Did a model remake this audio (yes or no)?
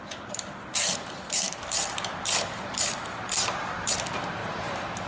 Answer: yes